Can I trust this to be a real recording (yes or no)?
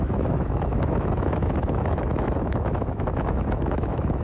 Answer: no